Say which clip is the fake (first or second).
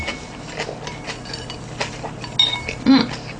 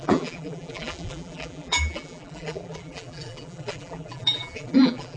second